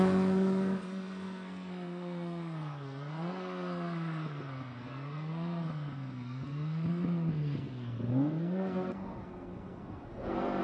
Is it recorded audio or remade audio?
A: remade